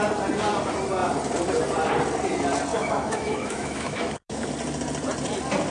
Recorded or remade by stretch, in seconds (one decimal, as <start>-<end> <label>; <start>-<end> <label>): 0.0-2.7 recorded; 2.7-4.5 remade; 4.5-5.7 recorded

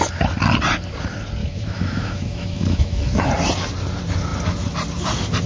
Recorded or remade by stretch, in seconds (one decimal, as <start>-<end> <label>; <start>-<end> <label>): 0.0-1.4 recorded; 1.4-3.2 remade; 3.2-5.5 recorded

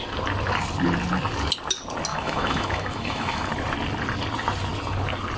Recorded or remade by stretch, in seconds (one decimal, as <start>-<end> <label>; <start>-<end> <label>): 0.0-2.1 recorded; 2.1-3.5 remade; 3.5-5.4 recorded

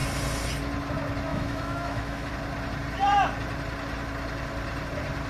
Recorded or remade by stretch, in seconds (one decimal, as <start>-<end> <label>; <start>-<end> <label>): 0.0-1.3 recorded; 1.3-2.3 remade; 2.3-5.3 recorded

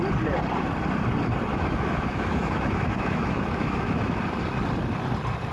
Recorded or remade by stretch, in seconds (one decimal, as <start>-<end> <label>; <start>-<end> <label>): 0.0-1.5 recorded; 1.5-4.2 remade; 4.2-5.5 recorded

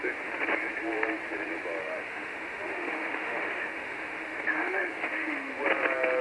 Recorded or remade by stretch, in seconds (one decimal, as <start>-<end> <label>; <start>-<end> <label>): 0.0-1.8 recorded; 1.8-5.5 remade; 5.5-6.2 recorded

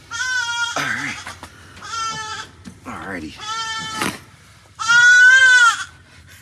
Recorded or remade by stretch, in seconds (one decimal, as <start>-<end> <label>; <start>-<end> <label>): 0.0-6.4 recorded